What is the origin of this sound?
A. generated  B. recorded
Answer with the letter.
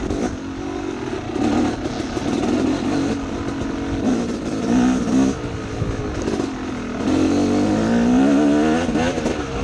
B